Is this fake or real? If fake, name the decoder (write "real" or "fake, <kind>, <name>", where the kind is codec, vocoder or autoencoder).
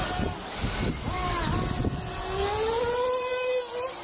real